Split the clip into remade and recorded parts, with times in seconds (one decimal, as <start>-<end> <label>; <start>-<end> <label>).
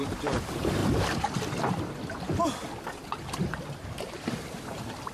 0.0-0.8 remade; 0.8-3.9 recorded; 3.9-5.1 remade